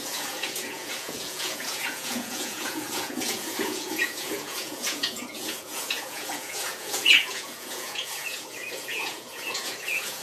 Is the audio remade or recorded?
remade